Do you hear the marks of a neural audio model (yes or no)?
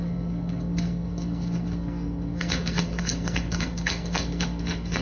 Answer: yes